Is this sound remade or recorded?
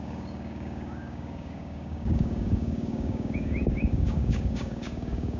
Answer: remade